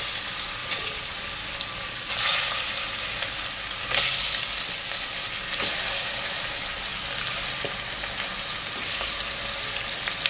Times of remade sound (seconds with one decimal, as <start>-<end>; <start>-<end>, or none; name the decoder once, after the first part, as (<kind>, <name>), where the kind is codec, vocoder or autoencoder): 0.6-1.3 (vocoder, Vocos)